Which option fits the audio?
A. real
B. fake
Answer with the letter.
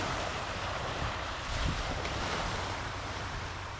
B